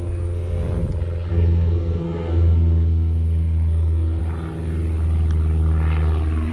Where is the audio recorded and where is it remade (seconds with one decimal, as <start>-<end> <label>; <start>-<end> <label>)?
0.0-0.8 remade; 0.8-1.3 recorded; 1.3-4.2 remade; 4.2-6.5 recorded